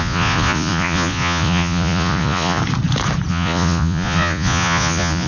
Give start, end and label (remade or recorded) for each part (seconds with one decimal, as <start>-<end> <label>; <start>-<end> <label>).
0.0-2.6 remade; 2.6-3.3 recorded; 3.3-5.3 remade